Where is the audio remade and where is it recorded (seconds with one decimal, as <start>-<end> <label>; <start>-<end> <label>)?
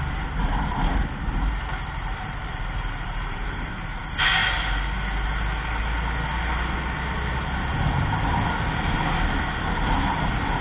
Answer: 0.0-2.1 recorded; 2.1-3.7 remade; 3.7-10.6 recorded